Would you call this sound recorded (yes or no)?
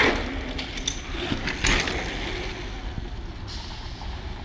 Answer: yes